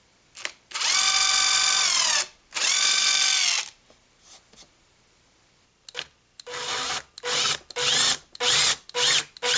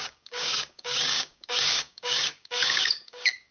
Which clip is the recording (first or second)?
first